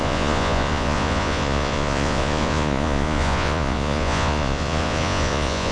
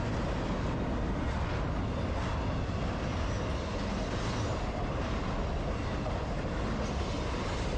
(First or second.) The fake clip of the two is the first